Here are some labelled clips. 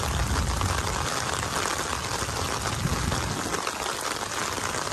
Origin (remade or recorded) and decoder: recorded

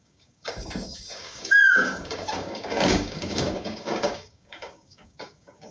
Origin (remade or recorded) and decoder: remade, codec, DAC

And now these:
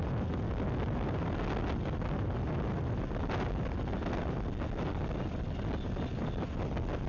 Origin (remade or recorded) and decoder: recorded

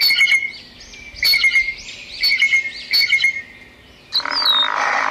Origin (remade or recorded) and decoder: recorded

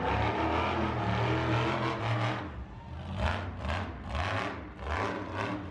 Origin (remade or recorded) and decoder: recorded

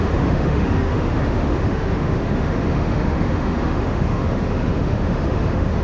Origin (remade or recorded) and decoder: remade, autoencoder, DAC-VAE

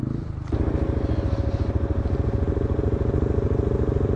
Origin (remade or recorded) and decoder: recorded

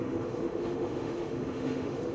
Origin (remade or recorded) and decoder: remade, autoencoder, DAC-VAE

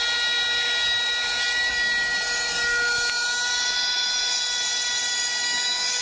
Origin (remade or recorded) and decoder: recorded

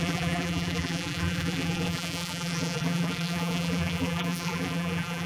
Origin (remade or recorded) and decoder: remade, vocoder, BigVGAN v2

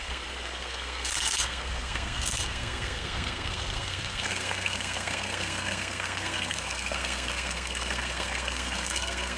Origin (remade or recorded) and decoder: remade, codec, SNAC